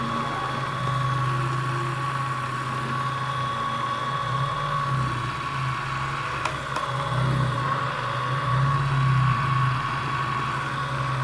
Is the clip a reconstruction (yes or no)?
no